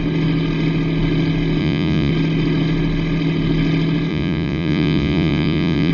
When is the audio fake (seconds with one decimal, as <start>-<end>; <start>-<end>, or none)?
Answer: 1.6-2.1; 4.1-5.9

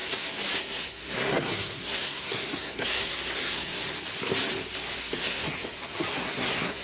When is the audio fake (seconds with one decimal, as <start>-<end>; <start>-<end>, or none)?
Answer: 0.6-3.8; 5.0-6.8

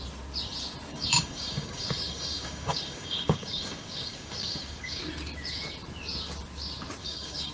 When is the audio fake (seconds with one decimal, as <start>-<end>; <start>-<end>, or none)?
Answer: 0.9-5.0; 7.0-7.5